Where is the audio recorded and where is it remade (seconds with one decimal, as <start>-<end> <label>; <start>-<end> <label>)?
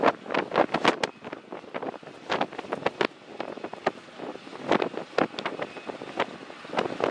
0.0-7.1 recorded